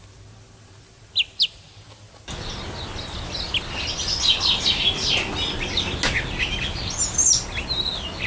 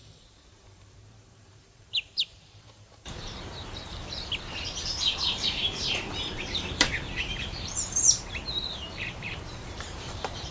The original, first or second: first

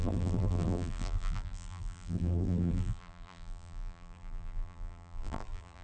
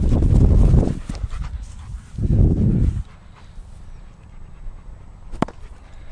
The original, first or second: second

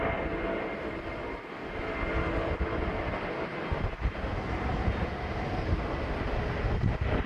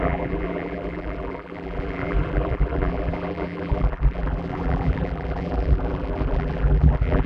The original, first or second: first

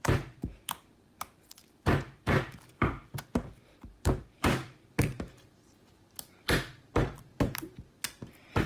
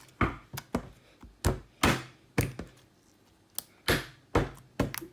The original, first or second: second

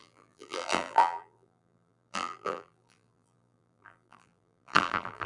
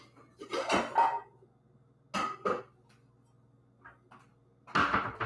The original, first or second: second